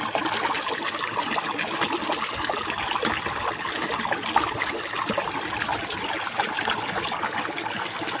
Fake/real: real